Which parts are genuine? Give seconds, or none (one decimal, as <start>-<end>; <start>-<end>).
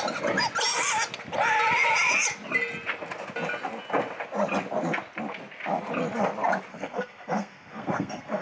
0.0-6.7